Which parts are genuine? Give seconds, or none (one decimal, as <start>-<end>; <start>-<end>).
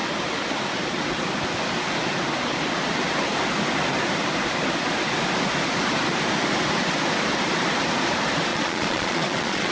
0.0-8.5